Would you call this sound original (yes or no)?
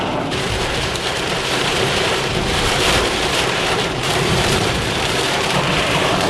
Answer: no